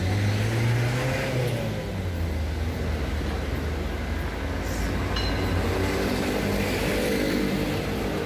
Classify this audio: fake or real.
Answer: real